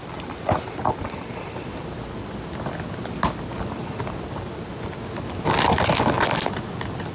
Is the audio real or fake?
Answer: real